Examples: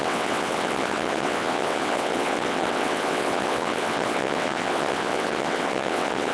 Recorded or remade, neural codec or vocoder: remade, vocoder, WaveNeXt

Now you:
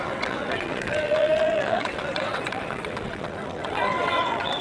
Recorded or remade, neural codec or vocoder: remade, vocoder, WaveNeXt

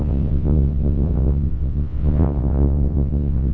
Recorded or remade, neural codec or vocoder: remade, vocoder, WaveNeXt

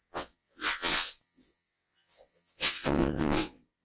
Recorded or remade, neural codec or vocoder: remade, vocoder, WaveNeXt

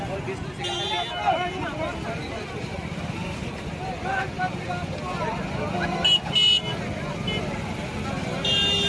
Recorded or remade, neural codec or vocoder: recorded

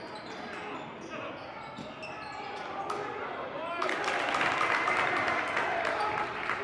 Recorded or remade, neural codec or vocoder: recorded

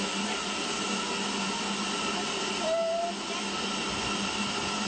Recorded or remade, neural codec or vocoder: recorded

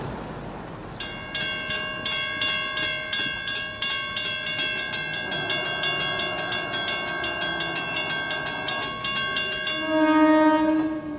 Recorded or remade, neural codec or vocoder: recorded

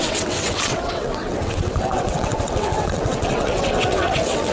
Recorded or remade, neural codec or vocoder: remade, vocoder, WaveNeXt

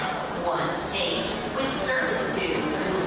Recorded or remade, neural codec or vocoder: recorded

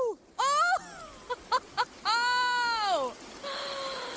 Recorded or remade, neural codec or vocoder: recorded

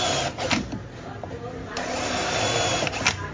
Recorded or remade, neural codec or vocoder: recorded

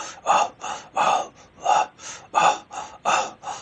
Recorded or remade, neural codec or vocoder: recorded